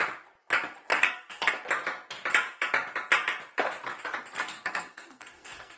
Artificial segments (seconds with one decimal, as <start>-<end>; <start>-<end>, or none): 0.9-1.5; 4.5-5.8